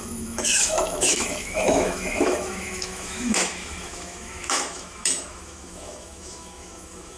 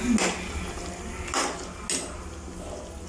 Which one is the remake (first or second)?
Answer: first